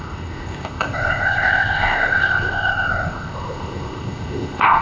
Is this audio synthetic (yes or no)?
yes